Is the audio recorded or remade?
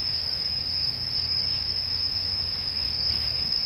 remade